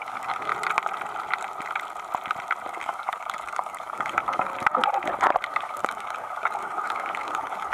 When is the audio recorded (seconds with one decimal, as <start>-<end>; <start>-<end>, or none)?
0.5-2.7; 4.5-5.5